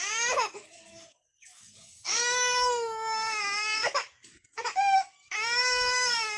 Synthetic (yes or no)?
yes